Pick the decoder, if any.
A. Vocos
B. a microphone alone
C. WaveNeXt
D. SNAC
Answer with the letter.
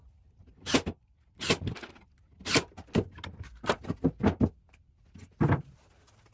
B